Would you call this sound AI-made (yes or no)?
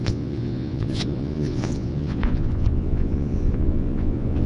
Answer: yes